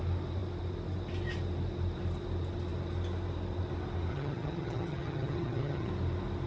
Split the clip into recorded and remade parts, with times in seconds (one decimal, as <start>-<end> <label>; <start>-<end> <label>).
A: 0.0-4.1 recorded; 4.1-5.9 remade; 5.9-6.5 recorded